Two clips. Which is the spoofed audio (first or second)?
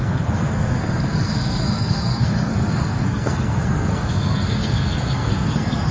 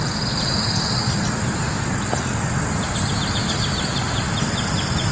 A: first